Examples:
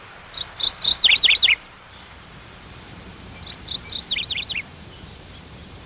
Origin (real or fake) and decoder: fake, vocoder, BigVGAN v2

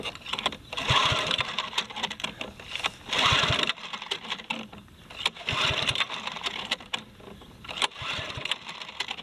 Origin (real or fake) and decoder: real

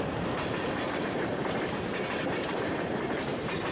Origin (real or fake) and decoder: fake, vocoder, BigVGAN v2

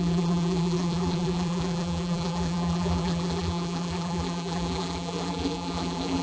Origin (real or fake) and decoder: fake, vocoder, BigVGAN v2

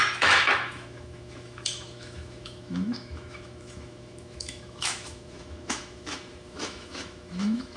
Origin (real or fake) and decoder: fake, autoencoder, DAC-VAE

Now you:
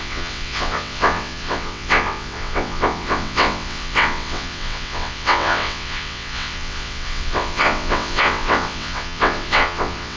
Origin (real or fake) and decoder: fake, vocoder, WaveNeXt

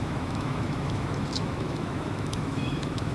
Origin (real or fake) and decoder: fake, autoencoder, DAC-VAE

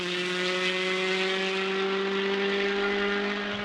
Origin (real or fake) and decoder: real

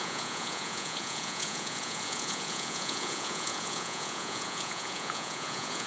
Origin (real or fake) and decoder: fake, vocoder, Vocos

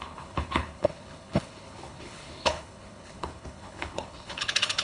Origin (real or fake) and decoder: fake, codec, HILCodec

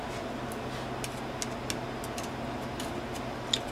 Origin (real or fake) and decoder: real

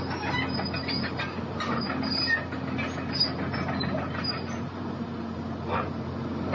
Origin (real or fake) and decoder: real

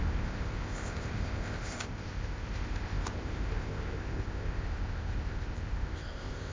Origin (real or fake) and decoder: fake, codec, ZipCodec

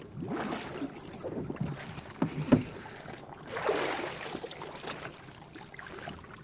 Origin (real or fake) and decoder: real